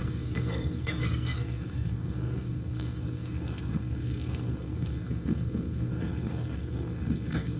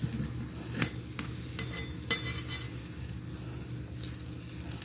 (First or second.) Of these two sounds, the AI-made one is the first